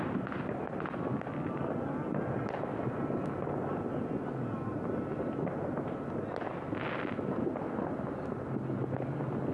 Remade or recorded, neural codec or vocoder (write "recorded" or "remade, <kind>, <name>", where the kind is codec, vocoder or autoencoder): recorded